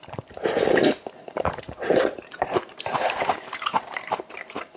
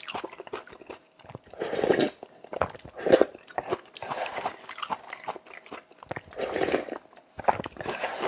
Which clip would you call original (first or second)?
second